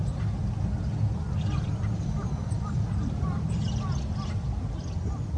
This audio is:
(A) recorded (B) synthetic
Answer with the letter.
A